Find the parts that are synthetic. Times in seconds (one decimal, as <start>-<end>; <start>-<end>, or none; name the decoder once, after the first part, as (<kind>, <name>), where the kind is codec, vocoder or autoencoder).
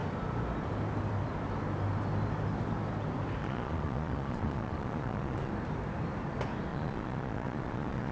3.4-5.5 (vocoder, Vocos); 6.7-8.1